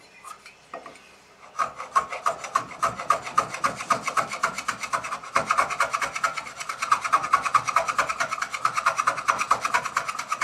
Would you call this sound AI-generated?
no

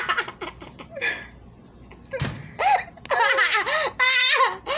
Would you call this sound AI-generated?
no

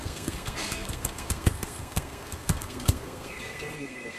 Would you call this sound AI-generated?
yes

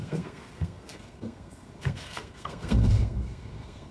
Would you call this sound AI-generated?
yes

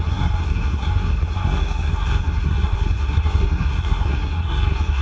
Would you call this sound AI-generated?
yes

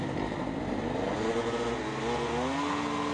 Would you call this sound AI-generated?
no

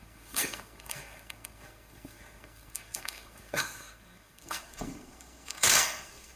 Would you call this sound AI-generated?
yes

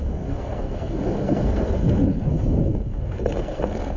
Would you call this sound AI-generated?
yes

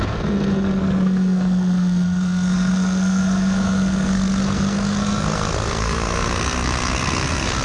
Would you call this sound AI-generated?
yes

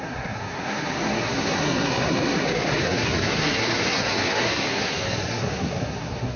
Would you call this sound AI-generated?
yes